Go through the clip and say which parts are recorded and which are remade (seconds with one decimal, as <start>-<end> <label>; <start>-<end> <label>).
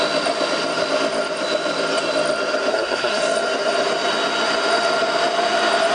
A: 0.0-2.7 recorded; 2.7-3.2 remade; 3.2-5.9 recorded